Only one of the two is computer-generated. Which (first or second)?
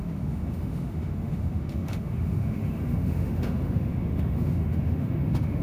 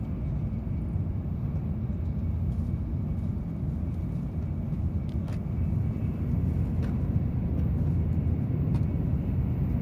first